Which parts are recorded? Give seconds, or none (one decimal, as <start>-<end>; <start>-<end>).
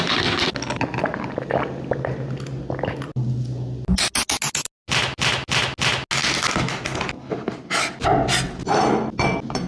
0.0-9.7